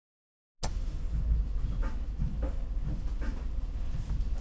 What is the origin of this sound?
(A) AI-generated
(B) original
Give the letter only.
B